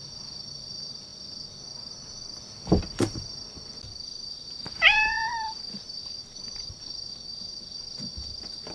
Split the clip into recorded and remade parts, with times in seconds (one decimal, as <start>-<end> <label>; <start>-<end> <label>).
0.0-4.7 recorded; 4.7-5.3 remade; 5.3-8.7 recorded